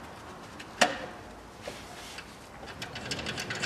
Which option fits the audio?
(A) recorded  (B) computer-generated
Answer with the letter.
A